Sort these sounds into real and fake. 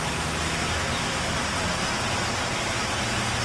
real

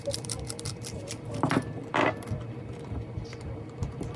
fake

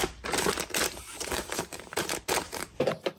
fake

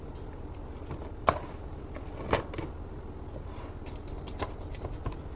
real